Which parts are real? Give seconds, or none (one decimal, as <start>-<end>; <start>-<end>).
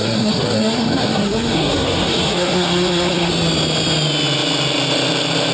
3.3-5.5